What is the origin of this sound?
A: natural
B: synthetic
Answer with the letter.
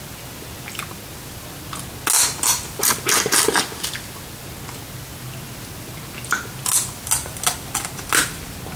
A